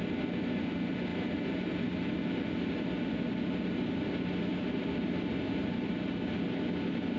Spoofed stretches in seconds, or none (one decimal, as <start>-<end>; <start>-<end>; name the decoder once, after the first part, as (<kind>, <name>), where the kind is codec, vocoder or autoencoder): none